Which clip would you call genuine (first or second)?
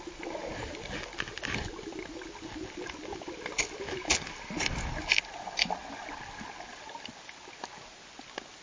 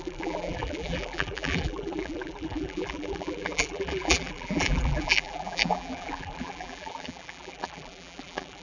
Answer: first